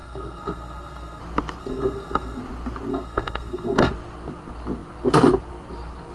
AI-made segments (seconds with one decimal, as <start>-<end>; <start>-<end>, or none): 0.0-1.2; 1.6-2.4; 2.9-3.9